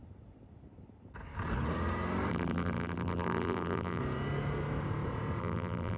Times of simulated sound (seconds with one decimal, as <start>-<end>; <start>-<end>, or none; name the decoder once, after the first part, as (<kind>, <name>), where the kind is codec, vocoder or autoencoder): 2.3-4.0 (vocoder, BigVGAN v2); 5.4-6.0